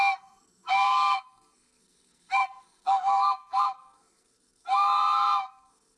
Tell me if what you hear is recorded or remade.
remade